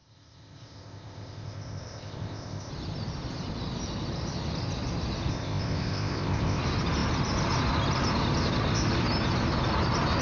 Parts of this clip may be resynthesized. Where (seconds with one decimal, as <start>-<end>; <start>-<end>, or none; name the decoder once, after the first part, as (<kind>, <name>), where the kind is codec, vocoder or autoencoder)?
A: 0.0-2.7 (codec, ZipCodec); 5.3-6.6

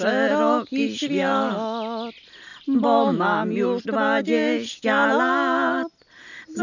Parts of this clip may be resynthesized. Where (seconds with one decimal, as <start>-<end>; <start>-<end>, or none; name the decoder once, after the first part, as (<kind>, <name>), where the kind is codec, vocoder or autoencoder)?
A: none

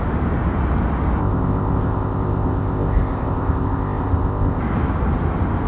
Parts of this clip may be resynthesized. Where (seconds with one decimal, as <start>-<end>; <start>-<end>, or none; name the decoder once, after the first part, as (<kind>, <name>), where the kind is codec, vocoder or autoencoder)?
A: 1.2-4.6 (codec, ZipCodec)